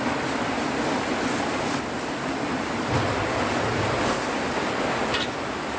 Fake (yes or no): no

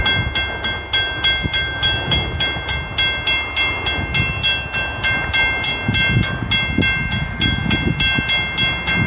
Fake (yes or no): no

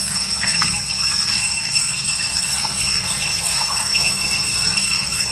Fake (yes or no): yes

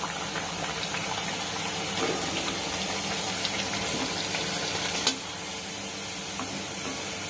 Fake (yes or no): no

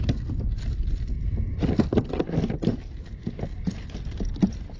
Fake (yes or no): no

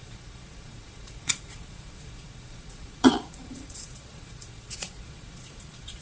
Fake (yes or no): yes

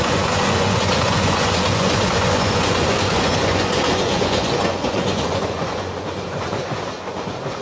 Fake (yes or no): yes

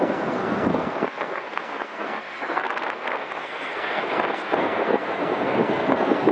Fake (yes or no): yes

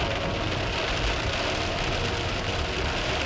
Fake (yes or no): no